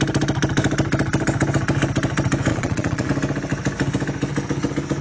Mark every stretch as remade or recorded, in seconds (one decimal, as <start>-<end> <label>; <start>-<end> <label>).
0.0-2.5 recorded; 2.5-3.1 remade; 3.1-5.0 recorded